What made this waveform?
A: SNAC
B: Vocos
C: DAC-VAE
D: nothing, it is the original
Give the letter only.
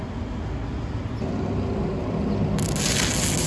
D